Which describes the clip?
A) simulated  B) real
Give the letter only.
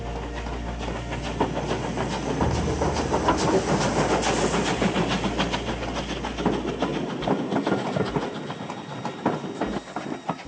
B